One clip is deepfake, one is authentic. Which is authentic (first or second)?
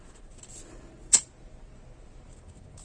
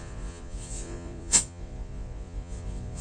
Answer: first